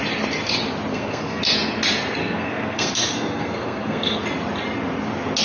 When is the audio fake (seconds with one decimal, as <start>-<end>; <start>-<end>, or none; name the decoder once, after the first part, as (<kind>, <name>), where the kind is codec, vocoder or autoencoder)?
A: 0.9-1.4 (codec, SNAC); 2.2-4.2